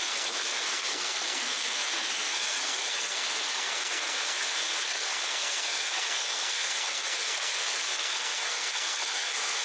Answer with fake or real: fake